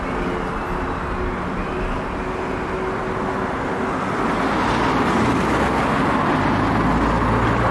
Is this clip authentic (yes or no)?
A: yes